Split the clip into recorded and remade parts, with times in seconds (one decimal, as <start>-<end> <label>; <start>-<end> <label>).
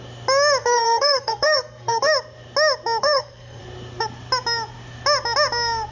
0.0-0.6 recorded; 0.6-2.1 remade; 2.1-3.0 recorded; 3.0-3.6 remade; 3.6-5.9 recorded